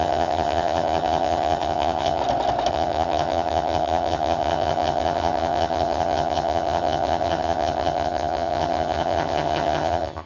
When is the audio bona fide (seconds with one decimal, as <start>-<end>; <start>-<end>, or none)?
2.2-2.7